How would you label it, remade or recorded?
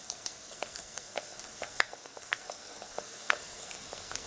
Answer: remade